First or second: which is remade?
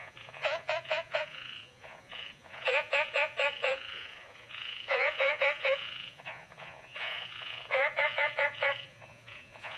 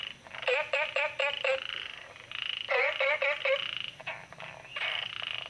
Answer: first